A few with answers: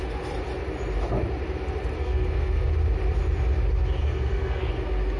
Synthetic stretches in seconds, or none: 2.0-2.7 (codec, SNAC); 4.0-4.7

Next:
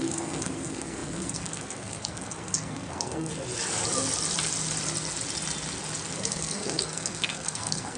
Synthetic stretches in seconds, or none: 0.0-3.3 (codec, SNAC); 6.1-8.0

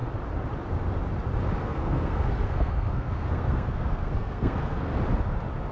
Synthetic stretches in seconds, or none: 1.6-5.0 (codec, SNAC)

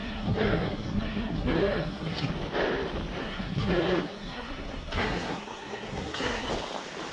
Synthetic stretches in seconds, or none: 0.0-2.3 (codec, SNAC); 3.2-6.5

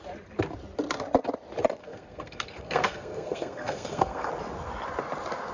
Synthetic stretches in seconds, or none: 1.8-4.3 (codec, SNAC)

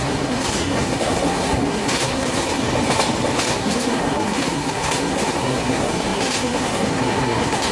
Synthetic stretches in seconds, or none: 0.0-2.6 (codec, SNAC); 3.4-7.7

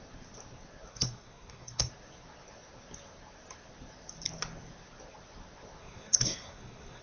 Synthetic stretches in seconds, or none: 0.9-1.9 (codec, SNAC); 5.8-7.0